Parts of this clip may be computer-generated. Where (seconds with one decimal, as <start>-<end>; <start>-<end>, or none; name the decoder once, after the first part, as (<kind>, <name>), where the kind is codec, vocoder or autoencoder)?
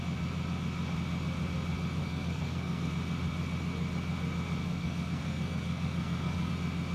2.0-2.9 (codec, SNAC); 4.6-6.5